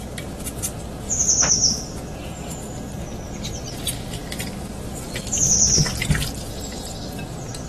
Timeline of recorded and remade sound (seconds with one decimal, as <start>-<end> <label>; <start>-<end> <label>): 0.0-7.7 recorded